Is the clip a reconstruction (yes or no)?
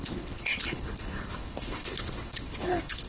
yes